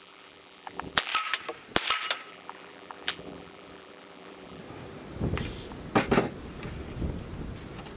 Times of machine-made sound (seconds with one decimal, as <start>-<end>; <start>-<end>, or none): 0.0-1.1; 2.3-4.6